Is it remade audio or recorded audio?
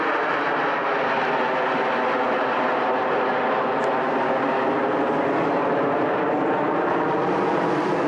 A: recorded